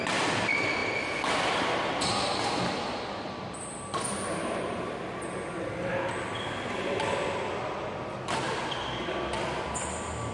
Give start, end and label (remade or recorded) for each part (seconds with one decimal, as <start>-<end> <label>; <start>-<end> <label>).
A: 0.0-10.3 recorded